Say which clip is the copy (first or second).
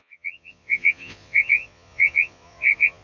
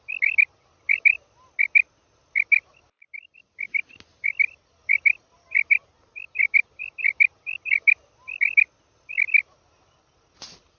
first